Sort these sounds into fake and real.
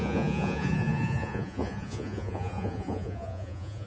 fake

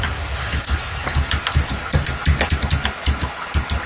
real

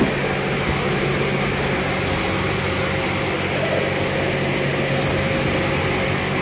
real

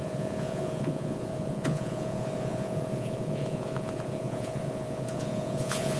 fake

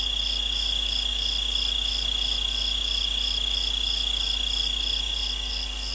real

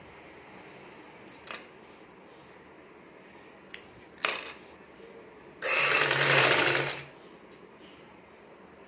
real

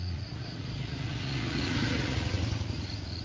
fake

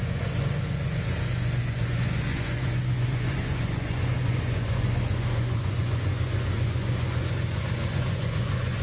fake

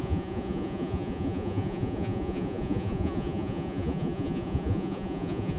fake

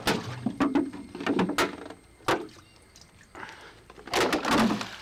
real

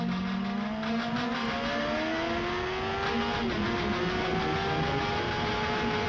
real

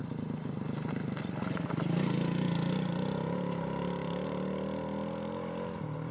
real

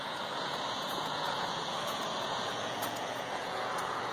fake